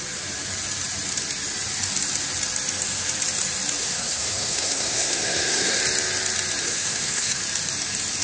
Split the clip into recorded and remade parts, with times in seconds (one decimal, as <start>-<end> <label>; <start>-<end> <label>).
0.0-3.8 recorded; 3.8-5.8 remade; 5.8-6.6 recorded; 6.6-7.4 remade; 7.4-8.2 recorded